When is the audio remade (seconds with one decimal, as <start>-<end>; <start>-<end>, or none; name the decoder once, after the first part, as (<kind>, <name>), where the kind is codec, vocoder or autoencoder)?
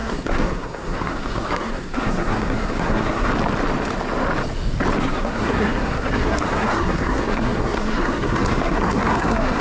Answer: 0.0-3.3 (codec, SNAC); 5.0-9.6